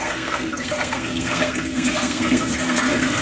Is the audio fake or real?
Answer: fake